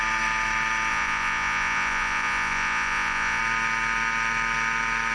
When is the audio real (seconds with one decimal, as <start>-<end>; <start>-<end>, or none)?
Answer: 0.0-0.9; 3.4-5.1